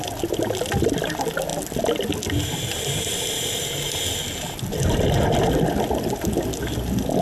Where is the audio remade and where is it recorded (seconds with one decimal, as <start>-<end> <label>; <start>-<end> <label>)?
0.0-7.2 recorded